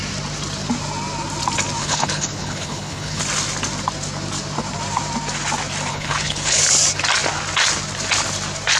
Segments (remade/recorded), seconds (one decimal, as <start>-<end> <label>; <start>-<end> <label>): 0.0-1.8 recorded; 1.8-3.2 remade; 3.2-5.9 recorded; 5.9-6.6 remade; 6.6-8.8 recorded